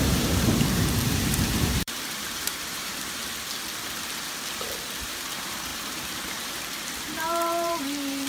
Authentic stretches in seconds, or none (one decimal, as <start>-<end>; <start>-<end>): 3.2-5.0